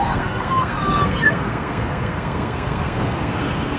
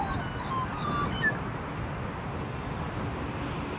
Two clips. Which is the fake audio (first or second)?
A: first